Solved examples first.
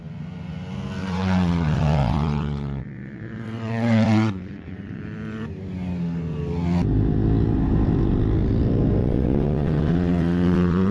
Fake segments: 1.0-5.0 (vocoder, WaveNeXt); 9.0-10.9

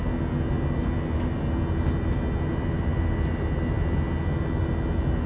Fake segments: none

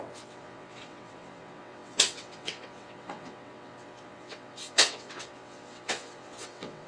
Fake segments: 0.0-6.9 (vocoder, WaveNeXt)